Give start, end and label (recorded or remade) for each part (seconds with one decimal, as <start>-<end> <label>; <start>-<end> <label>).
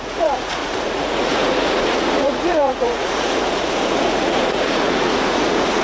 0.0-5.8 remade